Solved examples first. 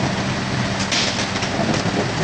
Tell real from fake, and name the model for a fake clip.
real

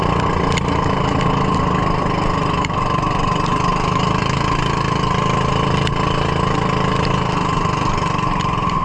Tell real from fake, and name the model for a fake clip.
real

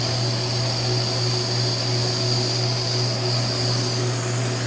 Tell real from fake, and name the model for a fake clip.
real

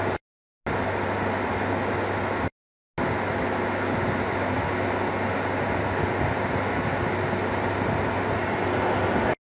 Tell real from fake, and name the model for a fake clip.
real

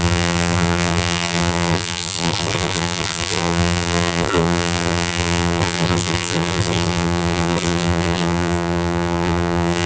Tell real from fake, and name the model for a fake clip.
fake, vocoder, BigVGAN v2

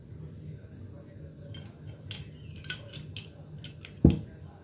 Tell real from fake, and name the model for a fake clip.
real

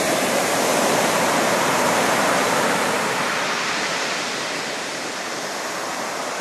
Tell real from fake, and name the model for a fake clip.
fake, vocoder, BigVGAN v2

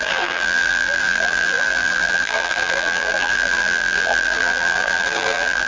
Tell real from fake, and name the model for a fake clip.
fake, vocoder, BigVGAN v2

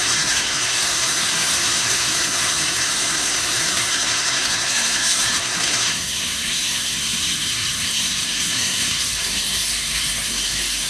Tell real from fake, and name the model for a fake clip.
fake, codec, SNAC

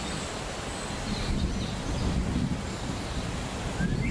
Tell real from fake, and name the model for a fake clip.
real